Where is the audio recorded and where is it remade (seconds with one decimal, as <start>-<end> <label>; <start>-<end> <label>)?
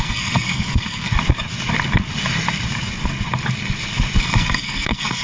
0.0-1.1 remade; 1.1-4.2 recorded; 4.2-5.2 remade